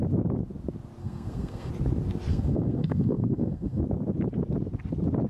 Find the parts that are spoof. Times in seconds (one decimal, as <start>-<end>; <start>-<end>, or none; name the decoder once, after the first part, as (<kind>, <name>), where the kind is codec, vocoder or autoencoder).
1.0-1.7 (codec, SNAC); 2.3-3.8